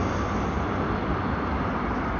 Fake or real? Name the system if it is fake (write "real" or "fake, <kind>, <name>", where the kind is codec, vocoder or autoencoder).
real